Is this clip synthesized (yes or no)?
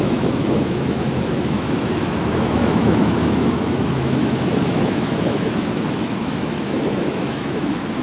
yes